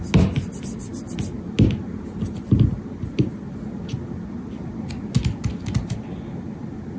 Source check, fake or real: real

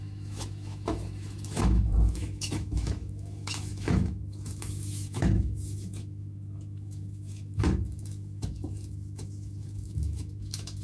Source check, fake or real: fake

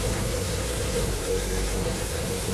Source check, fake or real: fake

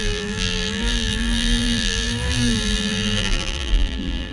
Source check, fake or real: fake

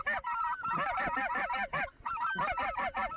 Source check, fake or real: real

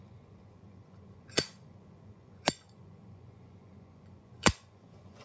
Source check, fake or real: fake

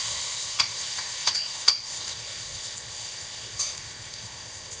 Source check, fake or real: fake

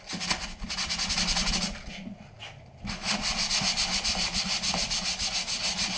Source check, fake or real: real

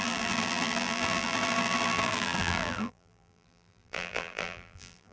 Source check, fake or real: fake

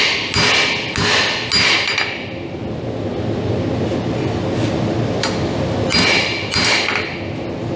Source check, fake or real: real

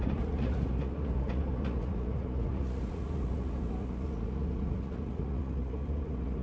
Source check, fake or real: fake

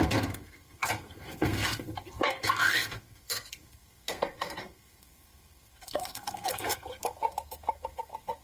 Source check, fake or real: fake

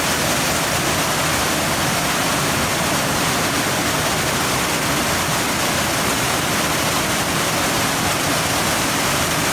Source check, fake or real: real